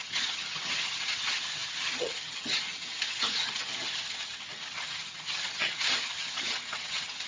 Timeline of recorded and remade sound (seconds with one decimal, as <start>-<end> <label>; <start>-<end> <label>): 0.0-7.3 remade